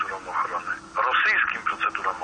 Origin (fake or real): real